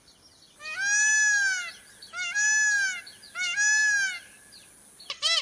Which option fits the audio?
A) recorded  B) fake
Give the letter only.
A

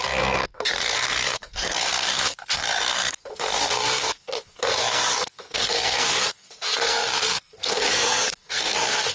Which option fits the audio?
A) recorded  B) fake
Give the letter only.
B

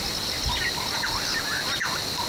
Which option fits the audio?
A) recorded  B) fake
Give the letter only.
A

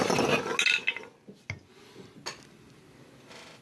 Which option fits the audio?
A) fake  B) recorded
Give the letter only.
B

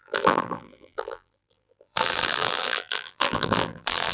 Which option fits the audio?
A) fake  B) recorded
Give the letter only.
A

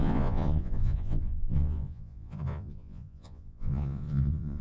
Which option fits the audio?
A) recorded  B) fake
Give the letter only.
B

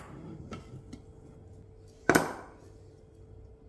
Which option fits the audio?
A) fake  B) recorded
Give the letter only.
B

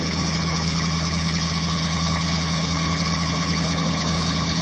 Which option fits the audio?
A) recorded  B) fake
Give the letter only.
B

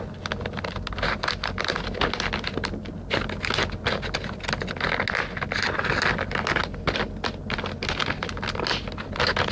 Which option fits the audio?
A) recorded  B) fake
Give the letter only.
A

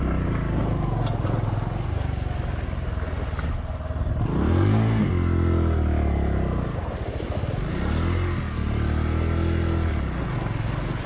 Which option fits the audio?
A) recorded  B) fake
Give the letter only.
A